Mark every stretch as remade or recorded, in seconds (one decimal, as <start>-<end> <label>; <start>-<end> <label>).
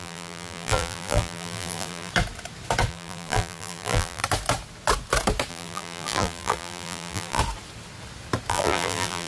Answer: 0.0-2.1 remade; 2.1-2.9 recorded; 2.9-4.2 remade; 4.2-5.5 recorded; 5.5-7.4 remade; 7.4-8.5 recorded; 8.5-9.3 remade